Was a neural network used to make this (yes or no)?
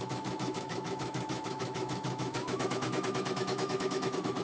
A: yes